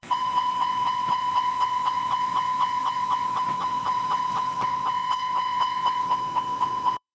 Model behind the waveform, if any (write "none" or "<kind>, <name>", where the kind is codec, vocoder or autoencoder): vocoder, WaveNeXt